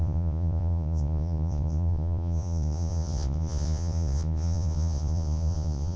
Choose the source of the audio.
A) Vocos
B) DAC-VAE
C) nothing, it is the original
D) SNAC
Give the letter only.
A